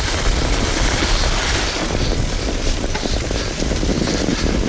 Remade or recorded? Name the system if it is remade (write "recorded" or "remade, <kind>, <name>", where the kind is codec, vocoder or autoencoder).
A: recorded